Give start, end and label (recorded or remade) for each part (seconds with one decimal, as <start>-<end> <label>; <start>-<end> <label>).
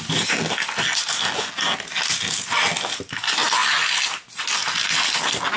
0.0-5.6 recorded